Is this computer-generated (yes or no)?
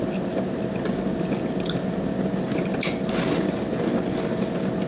no